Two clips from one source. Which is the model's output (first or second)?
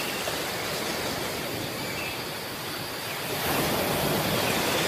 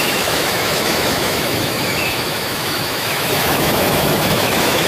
second